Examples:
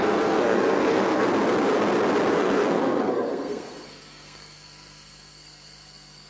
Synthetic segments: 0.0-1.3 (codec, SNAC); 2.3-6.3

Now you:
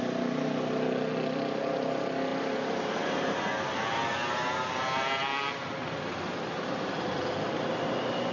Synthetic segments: 2.3-3.5 (vocoder, BigVGAN v2)

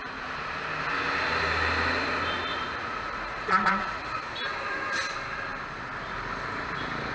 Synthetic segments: 2.5-4.2 (vocoder, Vocos)

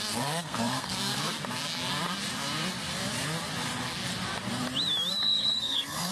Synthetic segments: 0.0-1.4 (codec, SNAC); 5.1-6.1